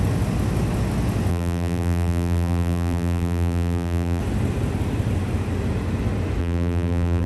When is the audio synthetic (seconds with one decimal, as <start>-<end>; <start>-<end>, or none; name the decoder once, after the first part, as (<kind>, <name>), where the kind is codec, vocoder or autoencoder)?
1.3-4.2 (vocoder, BigVGAN v2); 6.4-7.3